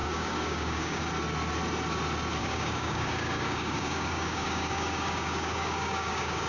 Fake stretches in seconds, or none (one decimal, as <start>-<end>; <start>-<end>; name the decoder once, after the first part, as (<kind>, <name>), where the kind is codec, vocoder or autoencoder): 0.0-1.0 (codec, DAC); 2.4-6.5